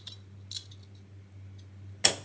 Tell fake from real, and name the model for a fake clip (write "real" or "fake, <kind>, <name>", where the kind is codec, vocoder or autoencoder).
real